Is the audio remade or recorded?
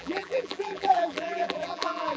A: remade